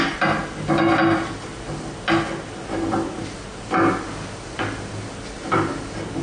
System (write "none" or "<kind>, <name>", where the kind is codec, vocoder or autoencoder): none